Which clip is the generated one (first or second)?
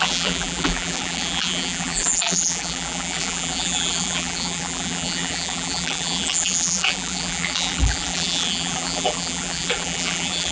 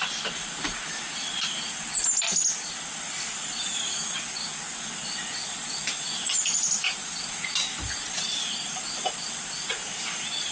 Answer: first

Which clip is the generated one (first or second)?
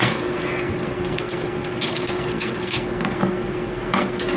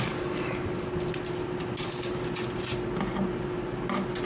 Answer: first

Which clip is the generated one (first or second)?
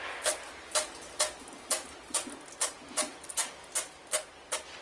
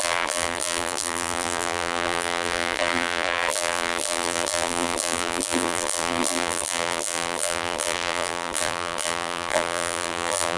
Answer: second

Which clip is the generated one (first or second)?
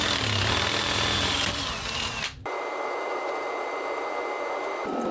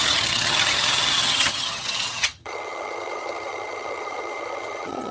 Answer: second